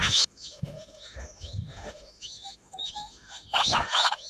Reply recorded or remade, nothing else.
remade